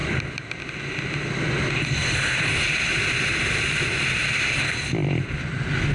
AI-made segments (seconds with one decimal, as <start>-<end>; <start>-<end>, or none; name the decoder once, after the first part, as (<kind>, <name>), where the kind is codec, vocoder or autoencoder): none